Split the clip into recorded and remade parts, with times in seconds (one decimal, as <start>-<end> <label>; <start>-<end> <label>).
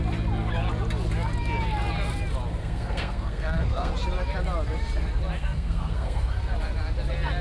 0.0-2.6 recorded; 2.6-3.9 remade; 3.9-5.4 recorded; 5.4-6.5 remade; 6.5-7.4 recorded